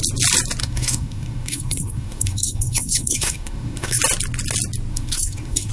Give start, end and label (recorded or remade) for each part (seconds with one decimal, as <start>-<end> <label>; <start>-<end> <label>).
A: 0.0-0.6 recorded; 0.6-4.0 remade; 4.0-4.9 recorded; 4.9-5.7 remade